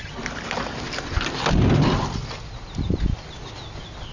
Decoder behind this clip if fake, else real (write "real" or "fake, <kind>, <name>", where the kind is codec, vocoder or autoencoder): real